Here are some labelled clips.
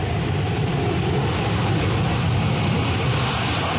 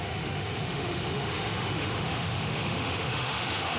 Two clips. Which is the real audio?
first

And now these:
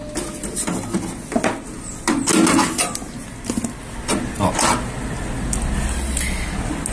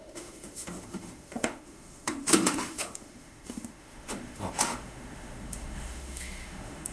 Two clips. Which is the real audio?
first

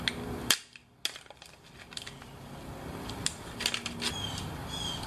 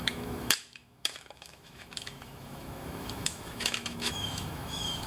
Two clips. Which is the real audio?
first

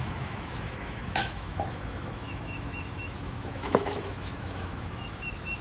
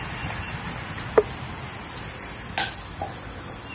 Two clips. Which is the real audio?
second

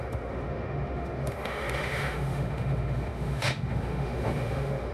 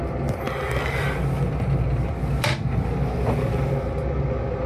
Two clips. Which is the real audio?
second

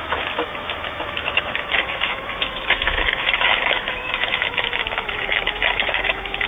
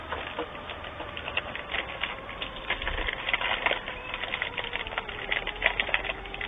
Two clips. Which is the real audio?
second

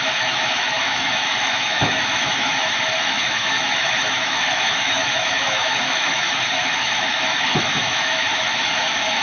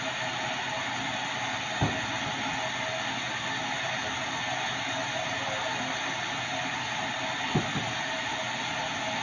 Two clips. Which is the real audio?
second